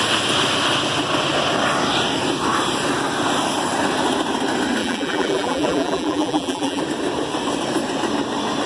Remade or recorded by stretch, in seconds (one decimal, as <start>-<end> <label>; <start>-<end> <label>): 0.0-4.8 recorded; 4.8-6.8 remade; 6.8-8.7 recorded